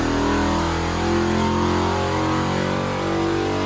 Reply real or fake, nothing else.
real